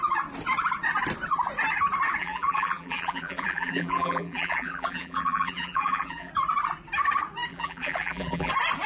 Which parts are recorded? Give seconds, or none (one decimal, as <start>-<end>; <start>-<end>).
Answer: 0.0-2.2; 6.3-7.5; 8.5-8.9